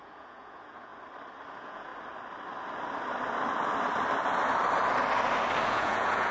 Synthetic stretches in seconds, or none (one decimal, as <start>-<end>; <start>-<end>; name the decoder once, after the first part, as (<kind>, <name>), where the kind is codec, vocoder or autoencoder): 0.0-0.9 (vocoder, Vocos); 1.5-1.9; 5.7-6.3